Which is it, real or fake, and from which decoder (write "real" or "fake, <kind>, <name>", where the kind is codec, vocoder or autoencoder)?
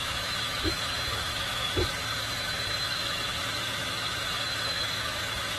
fake, autoencoder, DAC-VAE